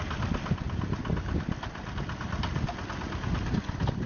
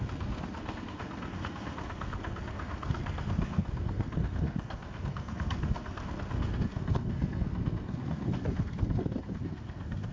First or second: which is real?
first